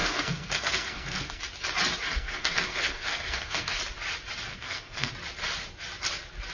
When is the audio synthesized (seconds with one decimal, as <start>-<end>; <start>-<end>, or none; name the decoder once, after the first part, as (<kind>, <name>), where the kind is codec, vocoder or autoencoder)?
0.0-1.4 (codec, SNAC); 2.1-3.8; 4.5-5.1